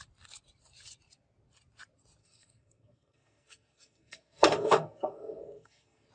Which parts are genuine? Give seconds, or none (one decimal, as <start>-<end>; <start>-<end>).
0.0-2.2